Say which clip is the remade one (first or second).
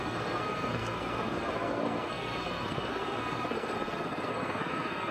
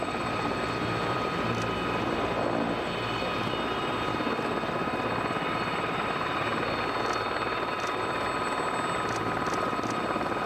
first